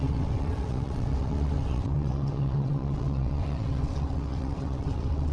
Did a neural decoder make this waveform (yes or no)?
yes